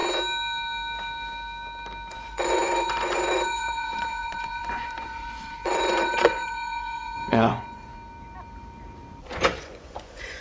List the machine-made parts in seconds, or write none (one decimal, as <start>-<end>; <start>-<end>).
2.1-7.9; 9.2-10.4